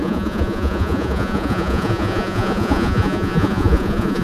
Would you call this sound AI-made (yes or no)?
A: yes